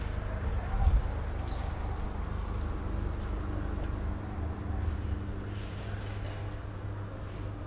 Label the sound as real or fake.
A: real